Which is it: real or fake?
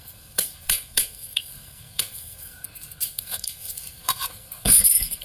fake